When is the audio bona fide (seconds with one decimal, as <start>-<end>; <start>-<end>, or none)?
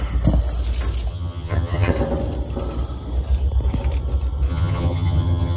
0.0-1.1; 1.9-4.5